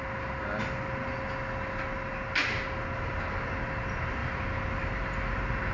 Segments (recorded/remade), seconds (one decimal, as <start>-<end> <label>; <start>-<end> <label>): 0.0-4.2 recorded; 4.2-5.3 remade; 5.3-5.7 recorded